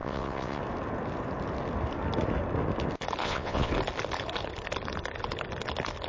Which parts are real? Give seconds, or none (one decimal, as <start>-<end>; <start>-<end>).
0.6-3.2; 3.7-6.1